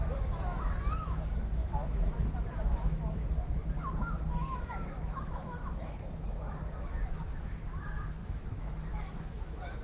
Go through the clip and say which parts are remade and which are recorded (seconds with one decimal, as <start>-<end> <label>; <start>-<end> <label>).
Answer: 0.0-9.8 remade